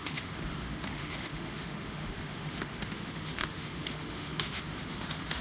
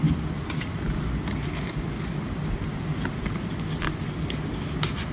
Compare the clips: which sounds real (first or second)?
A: second